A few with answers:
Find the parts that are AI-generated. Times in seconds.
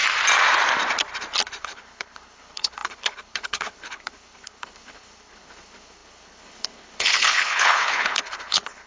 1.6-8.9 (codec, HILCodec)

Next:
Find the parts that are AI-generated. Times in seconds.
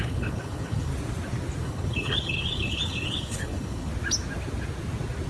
0.0-0.9 (codec, HILCodec); 1.6-3.9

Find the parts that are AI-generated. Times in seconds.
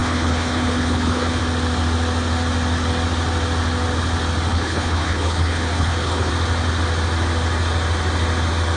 0.0-1.4 (codec, HILCodec); 4.5-6.3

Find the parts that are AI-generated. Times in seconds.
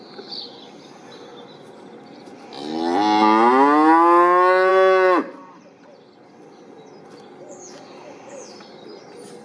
none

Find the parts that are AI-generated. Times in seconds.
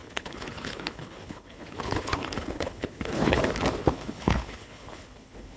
0.0-3.4 (codec, HILCodec); 3.8-5.6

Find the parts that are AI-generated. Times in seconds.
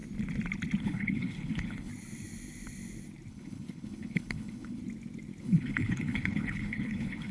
0.8-1.9 (codec, HILCodec); 3.3-4.8; 5.4-7.3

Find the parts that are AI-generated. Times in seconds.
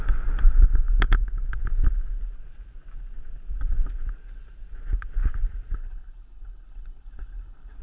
5.8-7.8 (codec, HILCodec)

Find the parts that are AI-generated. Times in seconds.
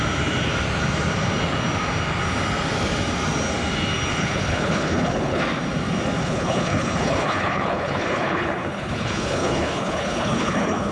4.1-5.4 (codec, HILCodec); 6.2-10.9